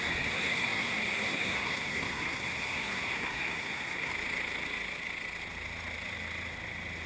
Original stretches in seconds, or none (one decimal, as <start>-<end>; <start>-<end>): 4.1-7.1